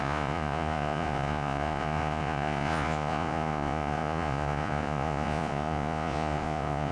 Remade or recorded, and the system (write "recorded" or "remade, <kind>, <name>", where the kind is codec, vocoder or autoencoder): remade, vocoder, Vocos